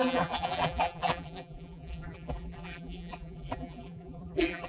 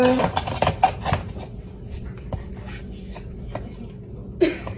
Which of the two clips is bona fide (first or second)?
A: second